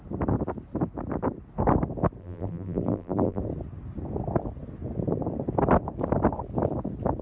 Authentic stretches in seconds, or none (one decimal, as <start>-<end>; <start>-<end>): 0.0-2.2; 3.4-7.2